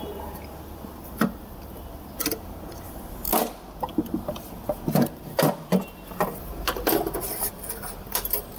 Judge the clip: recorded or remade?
recorded